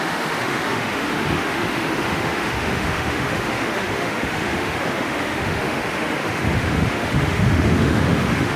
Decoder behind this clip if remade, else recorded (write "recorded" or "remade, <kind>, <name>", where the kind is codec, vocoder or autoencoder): remade, autoencoder, DAC-VAE